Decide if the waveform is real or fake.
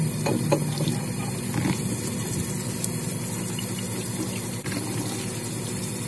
real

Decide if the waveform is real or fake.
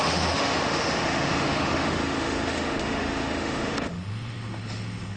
fake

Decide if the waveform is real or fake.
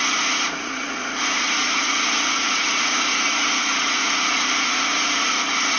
fake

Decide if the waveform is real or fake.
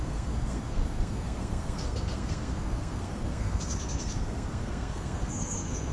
fake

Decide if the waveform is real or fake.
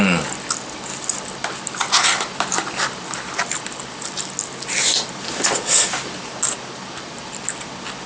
real